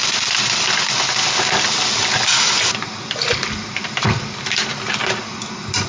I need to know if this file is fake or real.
real